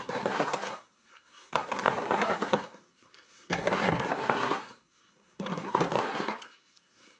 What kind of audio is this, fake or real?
fake